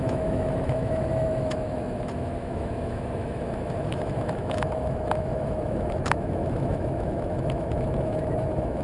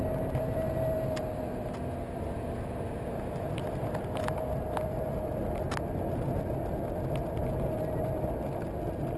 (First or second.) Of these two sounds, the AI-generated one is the first